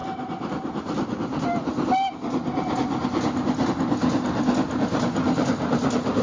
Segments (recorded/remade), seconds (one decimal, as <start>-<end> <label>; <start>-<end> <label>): 0.0-6.2 recorded